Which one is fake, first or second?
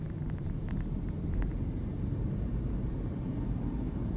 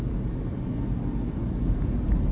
first